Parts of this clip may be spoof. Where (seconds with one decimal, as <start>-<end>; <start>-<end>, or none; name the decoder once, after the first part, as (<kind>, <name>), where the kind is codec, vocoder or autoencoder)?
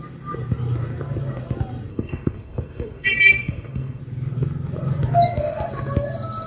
1.9-4.0 (codec, SNAC)